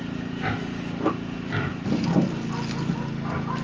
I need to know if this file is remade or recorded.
recorded